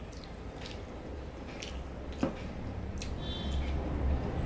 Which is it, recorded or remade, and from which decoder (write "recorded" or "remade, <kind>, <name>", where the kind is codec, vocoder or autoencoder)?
recorded